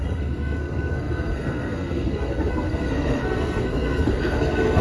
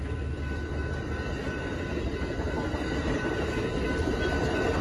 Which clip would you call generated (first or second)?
first